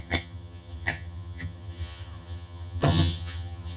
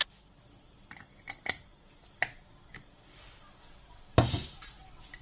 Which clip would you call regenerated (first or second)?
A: first